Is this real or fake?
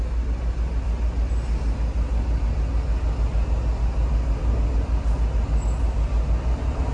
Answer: real